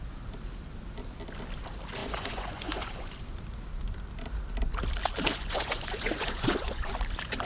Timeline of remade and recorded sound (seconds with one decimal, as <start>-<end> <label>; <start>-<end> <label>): 0.0-2.0 recorded; 2.0-3.1 remade; 3.1-5.3 recorded; 5.3-6.9 remade; 6.9-7.5 recorded